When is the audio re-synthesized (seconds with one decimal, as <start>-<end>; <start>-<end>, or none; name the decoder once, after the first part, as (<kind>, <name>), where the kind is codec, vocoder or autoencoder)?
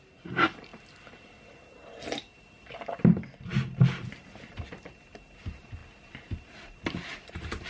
none